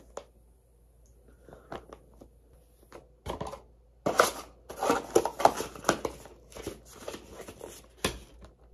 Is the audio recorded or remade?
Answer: recorded